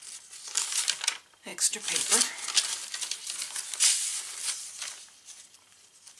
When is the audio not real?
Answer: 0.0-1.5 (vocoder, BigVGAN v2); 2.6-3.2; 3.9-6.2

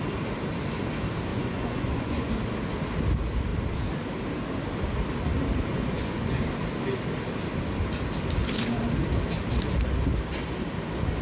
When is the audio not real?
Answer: 1.3-2.3 (vocoder, Vocos); 5.7-6.4

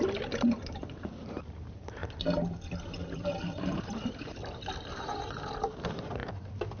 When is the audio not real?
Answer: 0.0-2.0 (vocoder, BigVGAN v2); 3.1-6.2